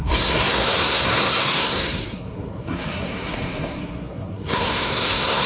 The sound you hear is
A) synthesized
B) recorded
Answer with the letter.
A